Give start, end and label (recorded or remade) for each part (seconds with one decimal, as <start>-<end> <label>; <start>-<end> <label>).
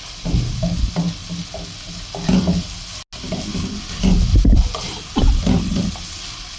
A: 0.0-6.6 recorded